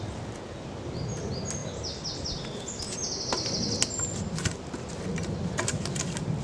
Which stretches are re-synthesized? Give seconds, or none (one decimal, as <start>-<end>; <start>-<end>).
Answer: none